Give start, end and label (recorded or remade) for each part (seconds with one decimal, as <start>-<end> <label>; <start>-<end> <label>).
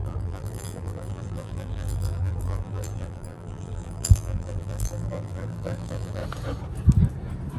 0.0-6.2 remade; 6.2-7.6 recorded